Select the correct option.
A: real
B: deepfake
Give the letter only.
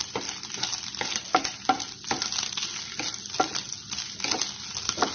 A